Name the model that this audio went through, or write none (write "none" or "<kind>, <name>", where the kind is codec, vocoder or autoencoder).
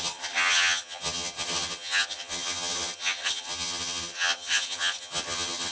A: vocoder, HiFi-GAN